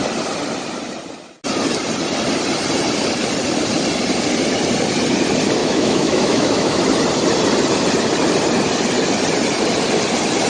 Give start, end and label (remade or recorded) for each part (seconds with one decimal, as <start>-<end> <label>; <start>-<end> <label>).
0.0-5.6 recorded; 5.6-6.8 remade; 6.8-10.5 recorded